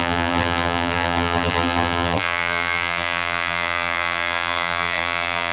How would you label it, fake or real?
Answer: fake